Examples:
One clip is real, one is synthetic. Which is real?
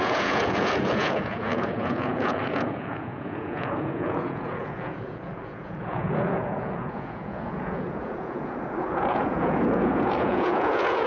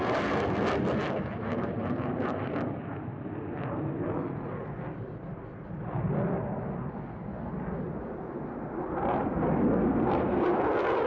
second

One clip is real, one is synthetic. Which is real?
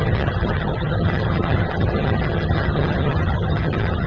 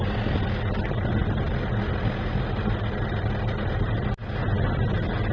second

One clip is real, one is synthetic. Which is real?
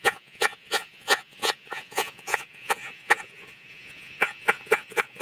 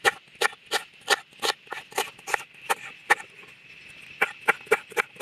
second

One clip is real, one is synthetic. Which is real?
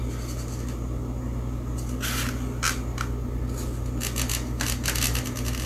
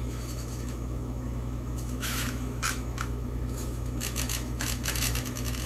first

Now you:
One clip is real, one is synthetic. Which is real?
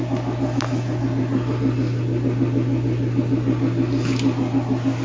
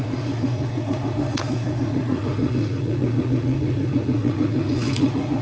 first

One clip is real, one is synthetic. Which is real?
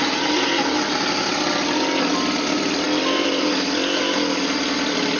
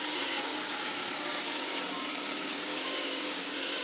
first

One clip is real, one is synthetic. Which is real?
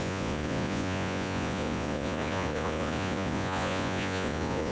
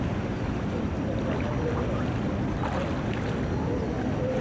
second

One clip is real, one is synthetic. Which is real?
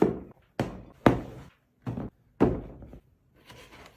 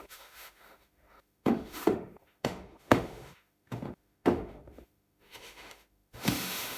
first